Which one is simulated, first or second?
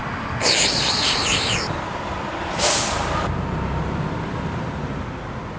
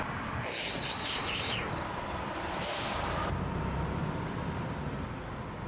second